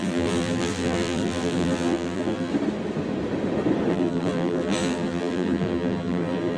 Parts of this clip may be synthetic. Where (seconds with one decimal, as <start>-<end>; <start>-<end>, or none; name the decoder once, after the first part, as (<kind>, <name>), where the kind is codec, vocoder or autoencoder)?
0.0-2.5 (vocoder, BigVGAN v2); 3.9-6.6